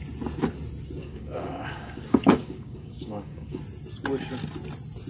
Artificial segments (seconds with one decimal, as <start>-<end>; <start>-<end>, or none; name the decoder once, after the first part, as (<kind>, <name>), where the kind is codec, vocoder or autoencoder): 1.0-3.6 (codec, DAC)